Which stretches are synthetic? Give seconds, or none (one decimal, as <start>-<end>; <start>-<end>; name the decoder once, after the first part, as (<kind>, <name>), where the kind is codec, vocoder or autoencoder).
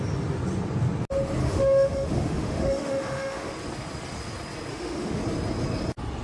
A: 1.4-3.5 (autoencoder, DAC-VAE); 4.7-5.2